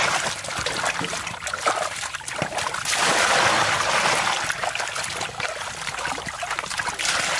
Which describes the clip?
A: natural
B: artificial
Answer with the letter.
A